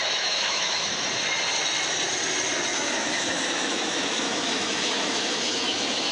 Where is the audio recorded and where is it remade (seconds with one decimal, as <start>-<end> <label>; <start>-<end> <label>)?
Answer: 0.0-0.9 remade; 0.9-2.7 recorded; 2.7-6.1 remade